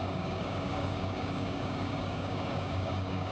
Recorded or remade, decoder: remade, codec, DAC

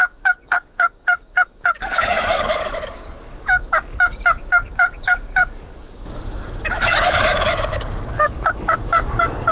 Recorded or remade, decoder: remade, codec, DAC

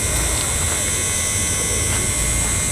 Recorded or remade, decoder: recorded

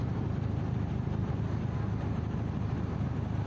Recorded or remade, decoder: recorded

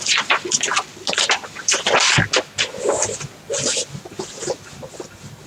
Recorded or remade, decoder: recorded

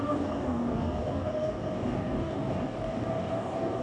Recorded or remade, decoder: remade, codec, DAC